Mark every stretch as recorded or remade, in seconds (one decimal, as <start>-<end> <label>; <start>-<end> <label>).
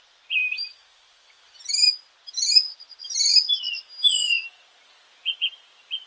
0.0-0.4 recorded; 0.4-1.4 remade; 1.4-6.1 recorded